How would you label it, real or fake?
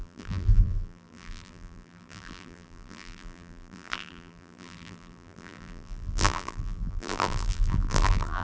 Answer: fake